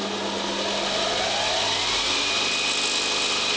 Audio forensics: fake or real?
real